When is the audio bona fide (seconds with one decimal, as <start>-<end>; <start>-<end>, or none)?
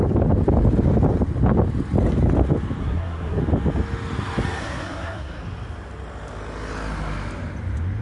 0.0-2.8; 3.4-4.6; 5.4-8.0